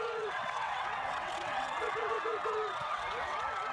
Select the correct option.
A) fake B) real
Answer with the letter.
A